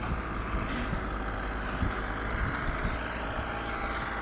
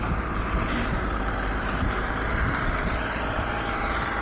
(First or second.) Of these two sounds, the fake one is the second